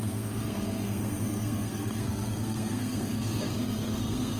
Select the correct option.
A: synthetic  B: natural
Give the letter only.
A